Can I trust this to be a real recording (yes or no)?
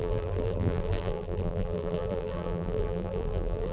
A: no